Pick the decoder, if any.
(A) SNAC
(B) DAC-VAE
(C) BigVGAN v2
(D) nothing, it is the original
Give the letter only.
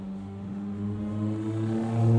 B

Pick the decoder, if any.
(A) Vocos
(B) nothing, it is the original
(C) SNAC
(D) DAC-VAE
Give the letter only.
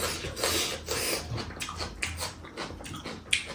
B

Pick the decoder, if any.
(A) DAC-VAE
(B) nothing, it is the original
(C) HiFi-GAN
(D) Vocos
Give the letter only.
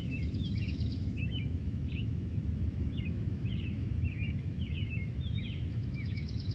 A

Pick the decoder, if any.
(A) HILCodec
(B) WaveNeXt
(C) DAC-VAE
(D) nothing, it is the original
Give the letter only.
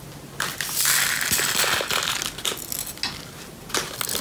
D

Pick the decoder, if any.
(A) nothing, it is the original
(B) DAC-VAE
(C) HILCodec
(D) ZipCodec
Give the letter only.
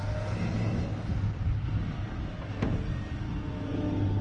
A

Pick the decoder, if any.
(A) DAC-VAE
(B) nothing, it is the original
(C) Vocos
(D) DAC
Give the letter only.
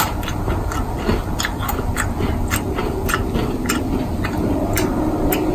B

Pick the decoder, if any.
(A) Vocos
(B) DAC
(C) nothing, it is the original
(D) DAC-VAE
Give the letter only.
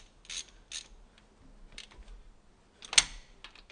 C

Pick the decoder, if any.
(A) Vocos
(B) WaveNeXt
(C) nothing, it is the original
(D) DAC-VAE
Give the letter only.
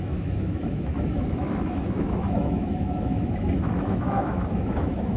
D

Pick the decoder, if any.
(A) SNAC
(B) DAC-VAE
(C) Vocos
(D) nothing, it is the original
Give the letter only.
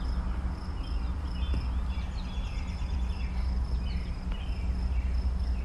D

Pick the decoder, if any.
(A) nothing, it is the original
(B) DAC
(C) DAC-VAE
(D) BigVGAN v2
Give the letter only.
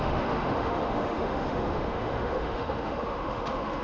C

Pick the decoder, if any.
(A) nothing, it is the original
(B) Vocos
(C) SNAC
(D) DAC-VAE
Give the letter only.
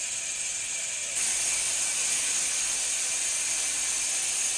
A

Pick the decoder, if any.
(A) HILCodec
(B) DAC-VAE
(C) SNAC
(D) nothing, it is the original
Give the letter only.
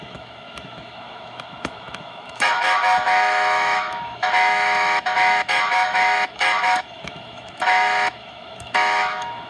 B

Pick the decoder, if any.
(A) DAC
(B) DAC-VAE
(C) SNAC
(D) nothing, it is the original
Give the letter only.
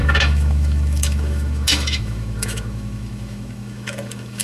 B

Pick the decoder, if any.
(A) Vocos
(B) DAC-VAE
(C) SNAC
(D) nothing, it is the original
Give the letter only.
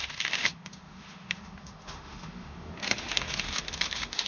B